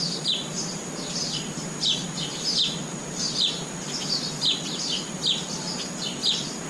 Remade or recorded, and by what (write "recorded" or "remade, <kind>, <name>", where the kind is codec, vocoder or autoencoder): recorded